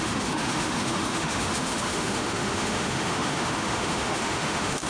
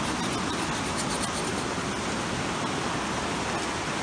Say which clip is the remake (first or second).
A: first